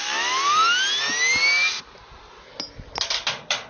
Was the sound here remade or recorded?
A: recorded